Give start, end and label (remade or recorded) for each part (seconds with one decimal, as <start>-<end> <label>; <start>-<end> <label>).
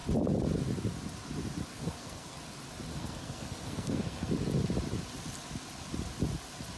0.0-1.7 recorded; 1.7-2.4 remade; 2.4-2.9 recorded; 2.9-4.3 remade; 4.3-6.8 recorded